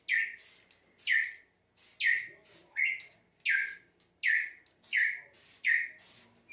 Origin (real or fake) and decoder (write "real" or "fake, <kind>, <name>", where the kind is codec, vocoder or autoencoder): real